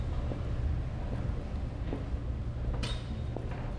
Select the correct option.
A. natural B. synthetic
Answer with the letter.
A